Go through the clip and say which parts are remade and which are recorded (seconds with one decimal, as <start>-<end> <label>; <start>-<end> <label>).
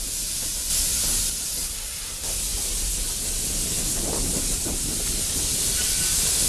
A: 0.0-6.5 recorded